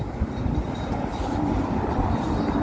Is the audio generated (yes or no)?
no